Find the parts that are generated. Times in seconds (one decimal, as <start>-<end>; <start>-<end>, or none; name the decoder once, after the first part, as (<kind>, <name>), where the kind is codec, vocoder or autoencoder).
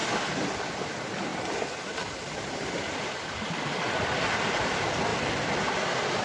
0.0-1.3 (vocoder, BigVGAN v2); 1.9-6.2